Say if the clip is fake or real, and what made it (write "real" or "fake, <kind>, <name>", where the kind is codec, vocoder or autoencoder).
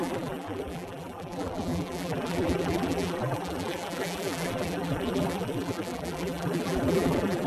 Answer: fake, vocoder, BigVGAN v2